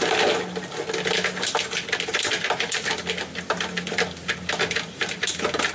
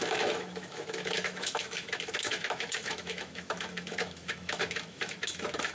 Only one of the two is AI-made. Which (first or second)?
second